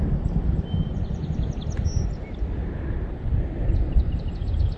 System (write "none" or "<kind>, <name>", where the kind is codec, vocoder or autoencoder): none